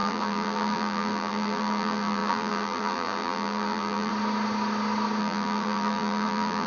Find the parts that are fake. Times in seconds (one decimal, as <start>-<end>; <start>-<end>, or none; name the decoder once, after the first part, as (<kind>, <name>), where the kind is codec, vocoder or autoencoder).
0.0-4.1 (vocoder, BigVGAN v2); 5.2-6.7